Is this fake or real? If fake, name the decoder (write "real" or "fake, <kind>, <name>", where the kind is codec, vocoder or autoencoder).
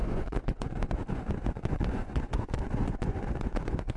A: fake, vocoder, Vocos